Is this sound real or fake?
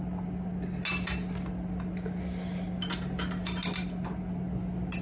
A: real